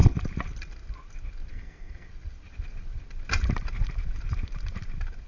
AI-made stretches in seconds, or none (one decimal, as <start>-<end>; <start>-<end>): 1.5-2.1